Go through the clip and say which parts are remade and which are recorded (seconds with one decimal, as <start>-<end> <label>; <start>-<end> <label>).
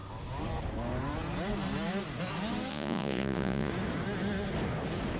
0.0-2.7 recorded; 2.7-3.7 remade; 3.7-5.2 recorded